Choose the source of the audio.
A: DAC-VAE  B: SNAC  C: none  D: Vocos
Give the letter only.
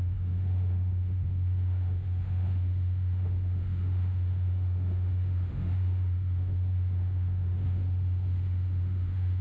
A